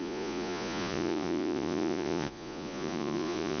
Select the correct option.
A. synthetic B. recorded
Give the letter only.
A